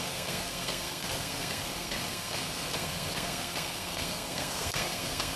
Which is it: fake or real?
fake